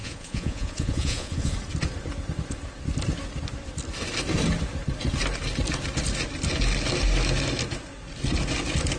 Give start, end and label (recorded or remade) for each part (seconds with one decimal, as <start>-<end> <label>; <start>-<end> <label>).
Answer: 0.0-1.5 remade; 1.5-9.0 recorded